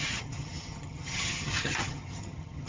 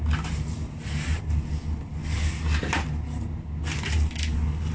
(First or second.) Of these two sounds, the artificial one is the first